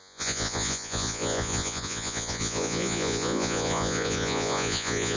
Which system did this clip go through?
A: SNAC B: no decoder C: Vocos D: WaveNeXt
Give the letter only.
C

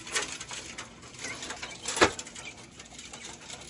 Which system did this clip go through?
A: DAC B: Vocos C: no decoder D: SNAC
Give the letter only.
C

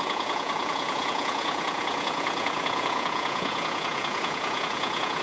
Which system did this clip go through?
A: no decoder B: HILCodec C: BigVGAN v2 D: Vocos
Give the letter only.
D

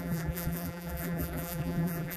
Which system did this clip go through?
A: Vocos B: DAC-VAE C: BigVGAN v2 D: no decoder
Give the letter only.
C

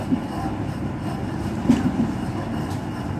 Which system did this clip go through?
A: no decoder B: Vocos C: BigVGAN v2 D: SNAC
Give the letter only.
A